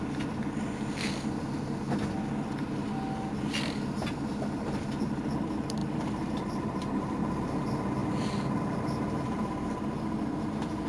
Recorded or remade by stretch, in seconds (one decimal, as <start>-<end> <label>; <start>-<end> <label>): 0.0-5.8 recorded; 5.8-7.2 remade; 7.2-10.9 recorded